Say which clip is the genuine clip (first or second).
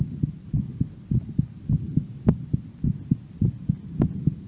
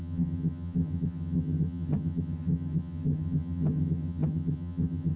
first